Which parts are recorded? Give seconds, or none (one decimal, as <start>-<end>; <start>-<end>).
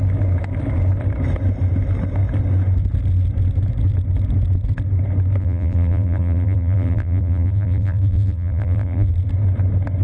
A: 0.0-5.4; 9.1-10.0